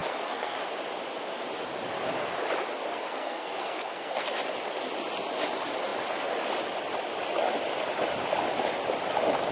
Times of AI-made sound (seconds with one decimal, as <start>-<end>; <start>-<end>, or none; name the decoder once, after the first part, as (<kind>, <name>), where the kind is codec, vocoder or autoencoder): 0.0-0.7 (codec, SNAC); 2.9-4.3